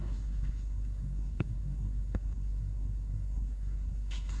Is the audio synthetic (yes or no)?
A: yes